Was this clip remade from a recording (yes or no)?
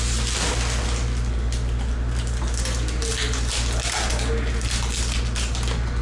no